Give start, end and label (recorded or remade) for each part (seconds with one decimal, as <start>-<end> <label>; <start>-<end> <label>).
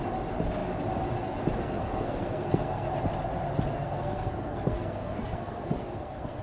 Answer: 0.0-1.6 recorded; 1.6-2.9 remade; 2.9-3.7 recorded; 3.7-6.4 remade